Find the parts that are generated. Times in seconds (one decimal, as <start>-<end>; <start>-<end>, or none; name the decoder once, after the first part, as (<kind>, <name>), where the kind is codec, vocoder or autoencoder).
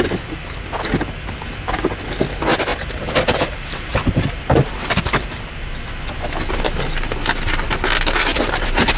2.7-5.7 (vocoder, BigVGAN v2); 8.3-9.0